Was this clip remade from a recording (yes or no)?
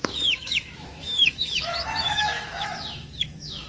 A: yes